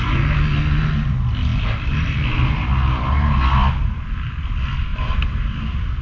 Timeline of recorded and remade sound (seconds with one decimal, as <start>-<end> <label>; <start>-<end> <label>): 0.0-6.0 recorded